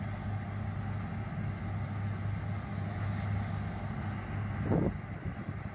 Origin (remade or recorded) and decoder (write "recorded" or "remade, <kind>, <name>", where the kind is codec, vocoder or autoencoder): recorded